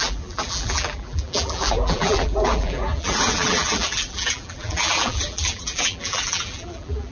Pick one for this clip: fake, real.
fake